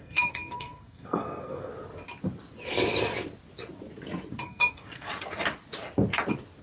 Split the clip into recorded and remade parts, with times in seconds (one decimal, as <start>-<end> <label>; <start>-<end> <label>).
0.0-1.7 remade; 1.7-4.4 recorded; 4.4-5.1 remade; 5.1-6.6 recorded